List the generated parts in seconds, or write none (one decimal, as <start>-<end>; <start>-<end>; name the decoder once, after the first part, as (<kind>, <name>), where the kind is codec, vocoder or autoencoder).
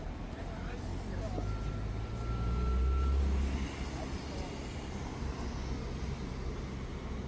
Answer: none